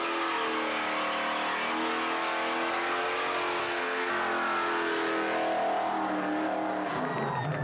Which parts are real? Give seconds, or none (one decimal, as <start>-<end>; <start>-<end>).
0.0-3.6; 4.1-7.6